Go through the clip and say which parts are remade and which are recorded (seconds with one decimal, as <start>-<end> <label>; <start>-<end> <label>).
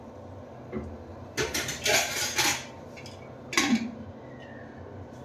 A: 0.0-5.2 recorded